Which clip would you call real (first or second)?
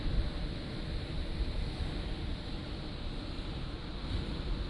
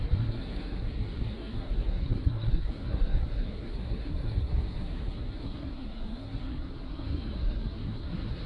first